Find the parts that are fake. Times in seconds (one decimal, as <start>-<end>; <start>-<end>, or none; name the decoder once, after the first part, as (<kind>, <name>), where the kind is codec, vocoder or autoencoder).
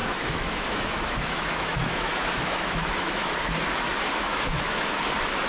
0.0-3.3 (autoencoder, DAC-VAE); 3.9-5.0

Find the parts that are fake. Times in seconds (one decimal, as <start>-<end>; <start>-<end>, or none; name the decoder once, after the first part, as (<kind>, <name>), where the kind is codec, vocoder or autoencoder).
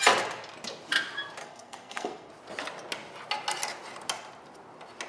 1.4-2.3 (codec, SNAC)